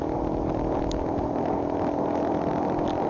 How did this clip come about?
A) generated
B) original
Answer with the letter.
B